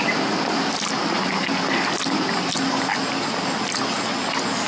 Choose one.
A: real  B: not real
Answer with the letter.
A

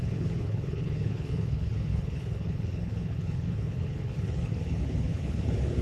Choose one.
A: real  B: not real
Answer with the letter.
B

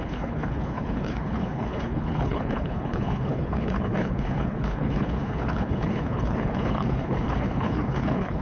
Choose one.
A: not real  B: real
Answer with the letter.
A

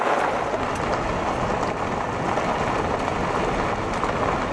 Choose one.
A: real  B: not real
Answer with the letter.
A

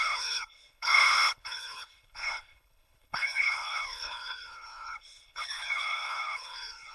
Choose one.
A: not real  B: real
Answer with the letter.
A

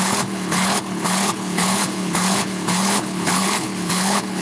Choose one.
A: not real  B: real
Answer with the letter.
A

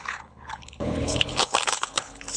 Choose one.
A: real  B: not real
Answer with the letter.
B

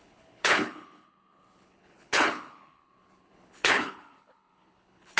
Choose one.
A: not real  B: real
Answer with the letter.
A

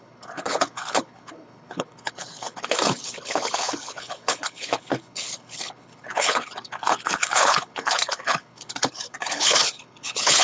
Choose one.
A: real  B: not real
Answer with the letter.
B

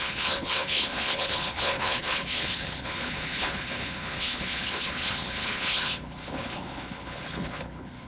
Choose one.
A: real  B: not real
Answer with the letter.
B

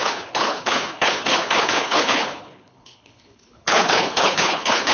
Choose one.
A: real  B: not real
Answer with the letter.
B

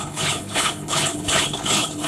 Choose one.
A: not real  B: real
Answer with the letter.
A